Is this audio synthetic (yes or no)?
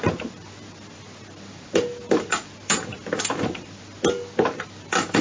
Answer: no